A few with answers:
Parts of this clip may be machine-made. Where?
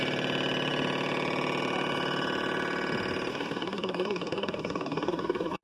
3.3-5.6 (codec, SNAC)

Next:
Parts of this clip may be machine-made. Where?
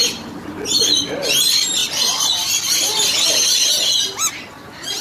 none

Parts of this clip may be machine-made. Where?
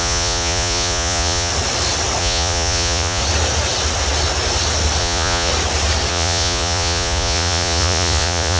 0.0-1.5 (vocoder, Vocos); 2.2-3.2; 5.0-5.5; 6.1-8.6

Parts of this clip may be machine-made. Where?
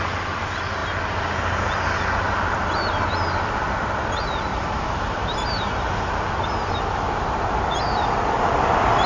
4.5-5.9 (vocoder, BigVGAN v2)